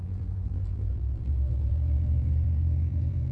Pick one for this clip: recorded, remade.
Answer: remade